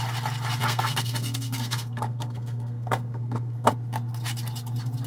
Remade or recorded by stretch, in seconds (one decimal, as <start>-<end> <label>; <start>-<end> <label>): 0.0-0.6 recorded; 0.6-3.7 remade; 3.7-5.1 recorded